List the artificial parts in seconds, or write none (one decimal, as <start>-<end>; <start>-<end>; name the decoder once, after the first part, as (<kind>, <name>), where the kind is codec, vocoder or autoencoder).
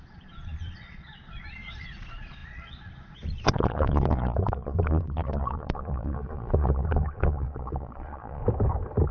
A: 0.0-8.4 (vocoder, Vocos)